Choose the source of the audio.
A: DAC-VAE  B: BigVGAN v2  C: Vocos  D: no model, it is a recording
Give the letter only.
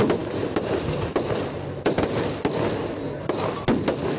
D